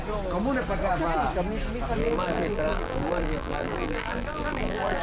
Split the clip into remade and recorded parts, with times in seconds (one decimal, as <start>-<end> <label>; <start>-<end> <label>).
0.0-2.0 recorded; 2.0-5.0 remade

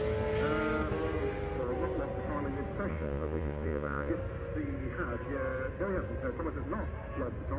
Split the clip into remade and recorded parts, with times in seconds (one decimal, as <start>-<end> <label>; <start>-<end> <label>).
0.0-2.9 recorded; 2.9-4.1 remade; 4.1-7.6 recorded

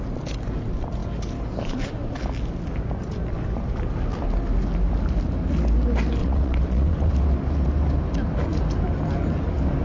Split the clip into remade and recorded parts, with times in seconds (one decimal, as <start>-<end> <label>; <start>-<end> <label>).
0.0-6.2 recorded; 6.2-7.1 remade; 7.1-9.8 recorded